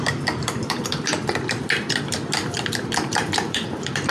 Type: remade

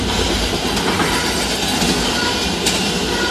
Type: recorded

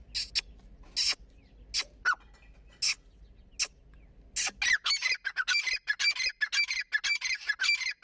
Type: recorded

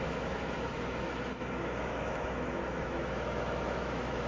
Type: remade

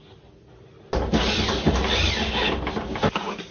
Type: recorded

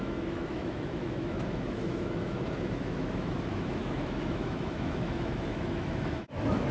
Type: remade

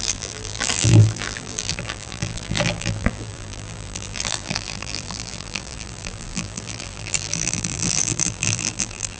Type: remade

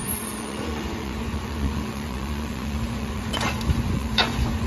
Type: remade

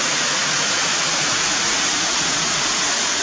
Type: remade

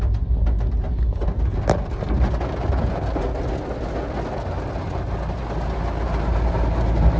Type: recorded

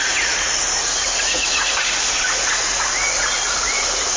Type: remade